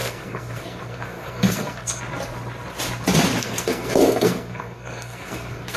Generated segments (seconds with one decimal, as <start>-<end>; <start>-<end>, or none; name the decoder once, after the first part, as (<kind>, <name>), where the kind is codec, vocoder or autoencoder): 0.0-2.0 (codec, SNAC); 3.4-5.8